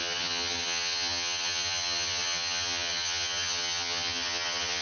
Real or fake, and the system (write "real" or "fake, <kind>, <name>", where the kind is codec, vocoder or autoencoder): fake, vocoder, HiFi-GAN